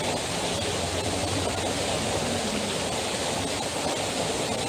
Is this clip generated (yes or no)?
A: no